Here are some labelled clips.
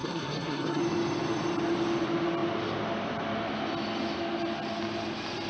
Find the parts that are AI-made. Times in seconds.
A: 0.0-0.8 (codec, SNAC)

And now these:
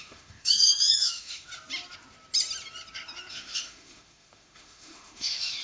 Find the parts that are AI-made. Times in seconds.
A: 0.0-1.5 (autoencoder, DAC-VAE); 3.3-5.6

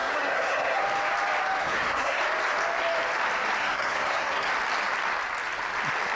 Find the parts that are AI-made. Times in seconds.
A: 0.0-0.8 (codec, SNAC); 1.6-2.2; 3.6-4.5

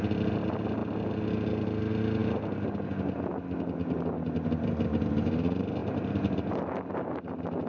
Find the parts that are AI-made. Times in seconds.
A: none

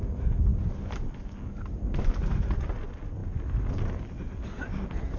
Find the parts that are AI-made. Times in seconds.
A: none

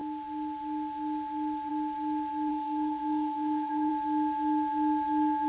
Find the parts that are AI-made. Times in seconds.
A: 2.5-3.9 (codec, SNAC)